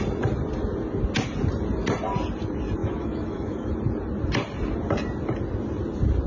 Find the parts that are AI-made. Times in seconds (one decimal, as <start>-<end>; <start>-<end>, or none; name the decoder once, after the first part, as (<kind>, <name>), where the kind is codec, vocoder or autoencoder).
2.8-3.7 (autoencoder, DAC-VAE)